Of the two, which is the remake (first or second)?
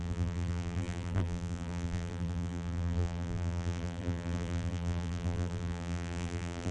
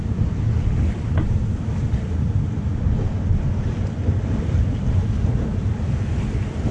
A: first